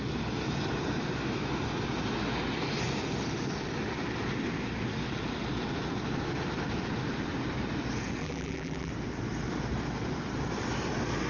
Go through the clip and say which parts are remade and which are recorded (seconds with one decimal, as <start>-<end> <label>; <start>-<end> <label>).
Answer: 0.0-8.2 recorded; 8.2-8.9 remade; 8.9-11.3 recorded